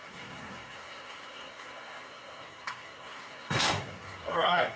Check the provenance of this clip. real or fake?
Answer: fake